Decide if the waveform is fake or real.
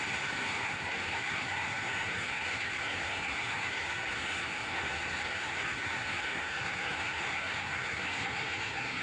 fake